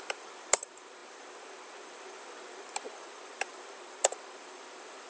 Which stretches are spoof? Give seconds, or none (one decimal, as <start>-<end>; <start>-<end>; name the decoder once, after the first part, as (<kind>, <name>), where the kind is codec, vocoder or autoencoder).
0.0-5.1 (vocoder, BigVGAN v2)